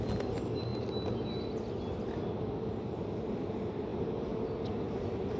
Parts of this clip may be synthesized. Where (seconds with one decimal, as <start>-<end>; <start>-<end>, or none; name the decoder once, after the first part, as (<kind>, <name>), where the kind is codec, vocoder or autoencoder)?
none